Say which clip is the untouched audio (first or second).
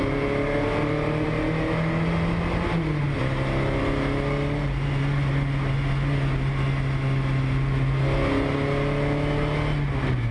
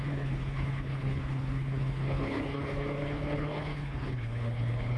first